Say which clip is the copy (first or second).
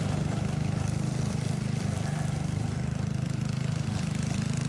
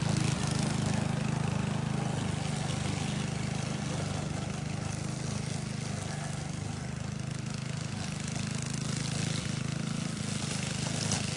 first